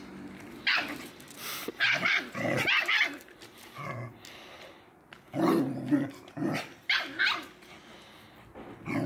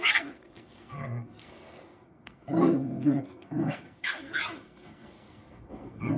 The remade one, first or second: second